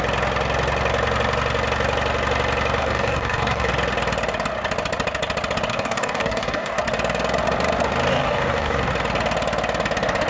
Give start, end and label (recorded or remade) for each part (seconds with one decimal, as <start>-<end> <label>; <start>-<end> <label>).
0.0-2.8 recorded; 2.8-3.7 remade; 3.7-5.7 recorded; 5.7-6.8 remade; 6.8-8.1 recorded; 8.1-8.9 remade; 8.9-10.3 recorded